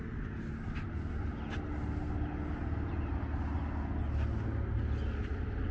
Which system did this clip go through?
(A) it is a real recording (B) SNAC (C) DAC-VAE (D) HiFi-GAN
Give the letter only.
A